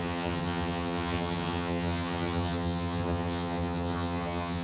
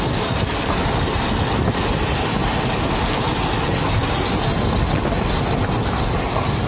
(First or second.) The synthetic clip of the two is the first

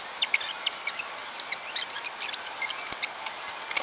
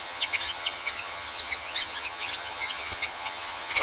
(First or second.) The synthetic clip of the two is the second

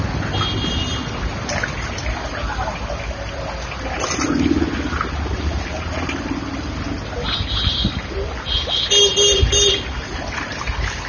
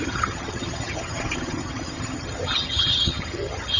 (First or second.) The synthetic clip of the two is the second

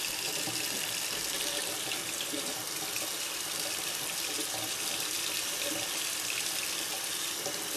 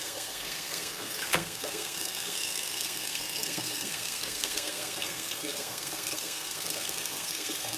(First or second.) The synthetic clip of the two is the second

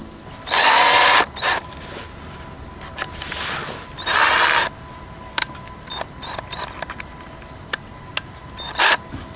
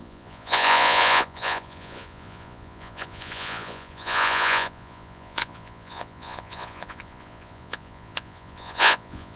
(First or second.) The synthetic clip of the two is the second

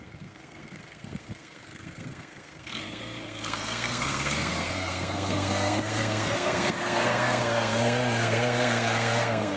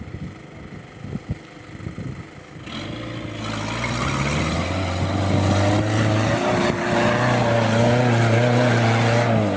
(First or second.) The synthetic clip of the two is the first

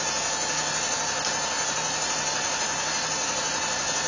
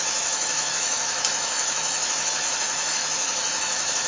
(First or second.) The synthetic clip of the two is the second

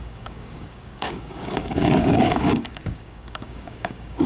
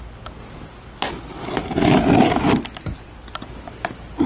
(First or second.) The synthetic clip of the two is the first